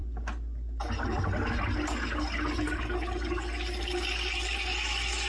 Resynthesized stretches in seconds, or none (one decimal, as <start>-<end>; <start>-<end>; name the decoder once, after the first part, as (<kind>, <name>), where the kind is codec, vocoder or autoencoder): none